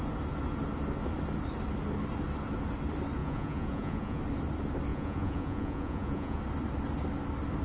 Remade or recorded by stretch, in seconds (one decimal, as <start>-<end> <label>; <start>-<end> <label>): 0.0-3.2 recorded; 3.2-4.2 remade; 4.2-4.9 recorded; 4.9-6.4 remade; 6.4-7.6 recorded

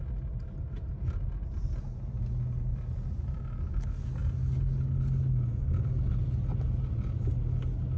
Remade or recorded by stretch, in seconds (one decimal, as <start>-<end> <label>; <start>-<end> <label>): 0.0-2.7 recorded; 2.7-3.4 remade; 3.4-8.0 recorded

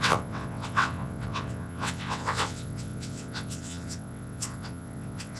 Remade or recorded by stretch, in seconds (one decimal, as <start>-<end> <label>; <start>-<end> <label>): 0.0-5.4 remade

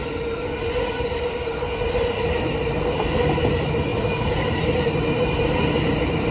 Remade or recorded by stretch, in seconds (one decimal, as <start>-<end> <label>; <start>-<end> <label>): 0.0-6.3 recorded